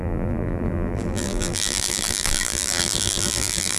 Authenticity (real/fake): fake